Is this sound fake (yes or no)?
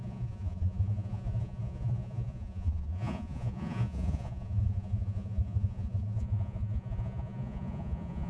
yes